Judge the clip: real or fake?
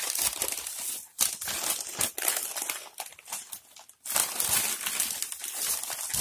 real